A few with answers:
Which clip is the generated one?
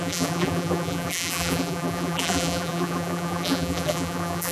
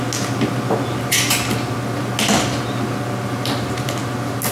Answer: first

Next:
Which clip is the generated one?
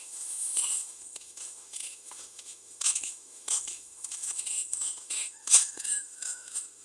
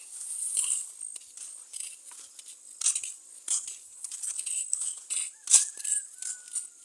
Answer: first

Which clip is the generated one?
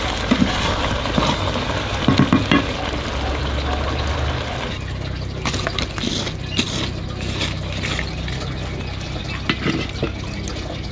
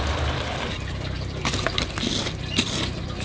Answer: second